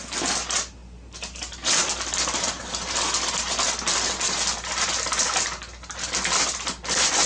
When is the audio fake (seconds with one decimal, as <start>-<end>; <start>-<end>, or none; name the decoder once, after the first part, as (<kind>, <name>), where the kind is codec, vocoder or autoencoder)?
none